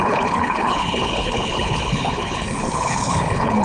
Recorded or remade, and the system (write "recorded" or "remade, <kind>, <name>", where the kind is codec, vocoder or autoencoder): remade, codec, HILCodec